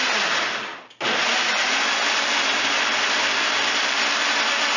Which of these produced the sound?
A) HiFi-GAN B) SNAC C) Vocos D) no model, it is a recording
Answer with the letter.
D